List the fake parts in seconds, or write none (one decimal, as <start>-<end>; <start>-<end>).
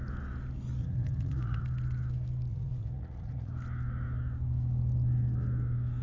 0.8-1.6; 2.5-3.5